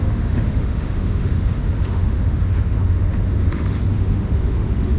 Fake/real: fake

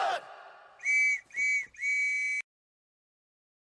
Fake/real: real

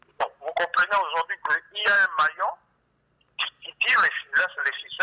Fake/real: real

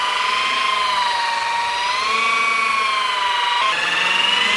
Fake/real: real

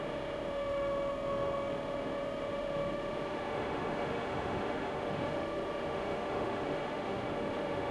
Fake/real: fake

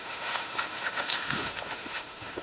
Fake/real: fake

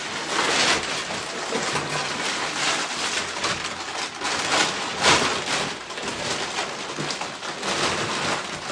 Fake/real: real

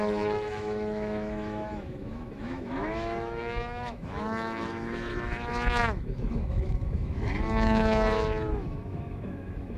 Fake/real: fake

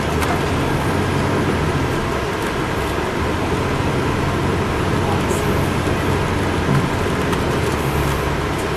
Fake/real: real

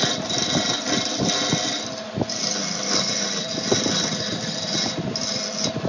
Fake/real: real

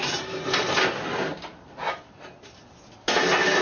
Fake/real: real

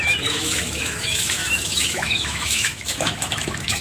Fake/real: fake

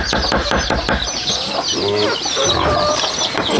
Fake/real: real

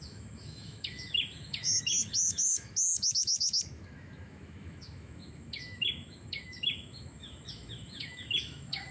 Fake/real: fake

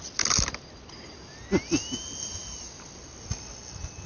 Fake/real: real